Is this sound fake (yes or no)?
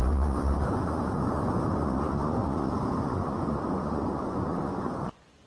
yes